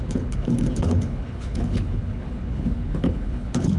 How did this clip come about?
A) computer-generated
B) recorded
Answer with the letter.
A